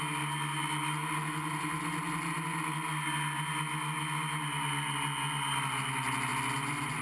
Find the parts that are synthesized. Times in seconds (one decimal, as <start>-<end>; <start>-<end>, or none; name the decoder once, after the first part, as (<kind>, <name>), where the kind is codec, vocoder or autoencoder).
none